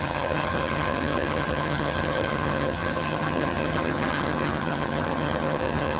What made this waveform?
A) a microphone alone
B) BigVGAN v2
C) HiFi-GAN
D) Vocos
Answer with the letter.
C